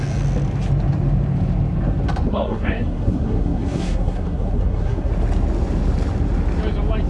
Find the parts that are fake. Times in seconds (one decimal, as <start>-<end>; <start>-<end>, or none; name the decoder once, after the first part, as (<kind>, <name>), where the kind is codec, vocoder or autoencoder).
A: 2.3-5.1 (codec, SNAC)